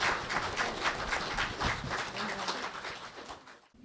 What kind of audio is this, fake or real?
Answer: real